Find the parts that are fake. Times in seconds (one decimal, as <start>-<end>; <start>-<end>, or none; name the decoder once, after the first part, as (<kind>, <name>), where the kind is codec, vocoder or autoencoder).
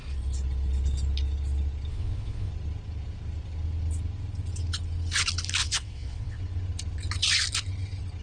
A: 1.9-2.5 (vocoder, WaveNeXt); 5.6-6.4